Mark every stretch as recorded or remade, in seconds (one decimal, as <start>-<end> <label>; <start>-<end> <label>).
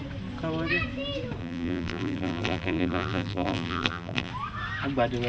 0.0-1.4 recorded; 1.4-4.3 remade; 4.3-5.3 recorded